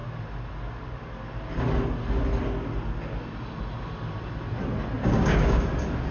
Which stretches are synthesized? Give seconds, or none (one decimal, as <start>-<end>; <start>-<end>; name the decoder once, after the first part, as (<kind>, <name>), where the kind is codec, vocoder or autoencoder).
5.0-5.6 (codec, DAC)